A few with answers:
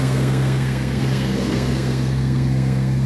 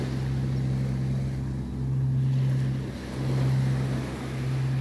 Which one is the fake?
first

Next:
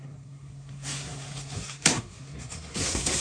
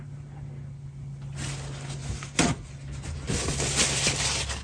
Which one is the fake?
first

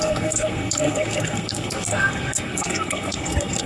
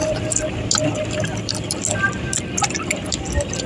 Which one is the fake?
first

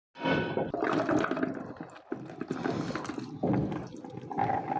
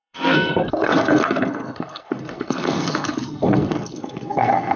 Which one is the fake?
second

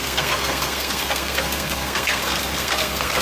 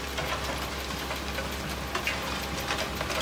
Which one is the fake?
first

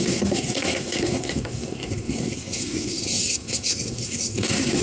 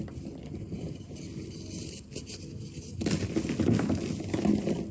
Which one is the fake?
first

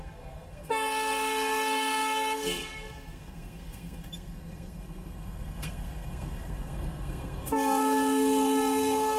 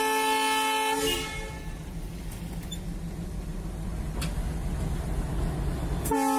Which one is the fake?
first